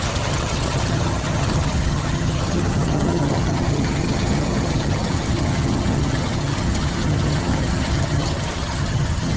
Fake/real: fake